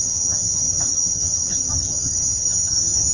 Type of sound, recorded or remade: remade